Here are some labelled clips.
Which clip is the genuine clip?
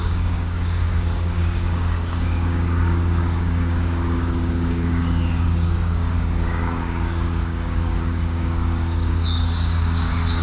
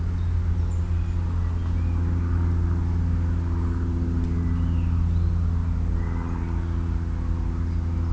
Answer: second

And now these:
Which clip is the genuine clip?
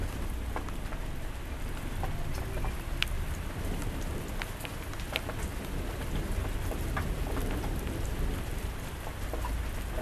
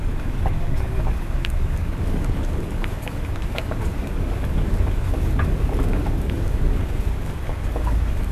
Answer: first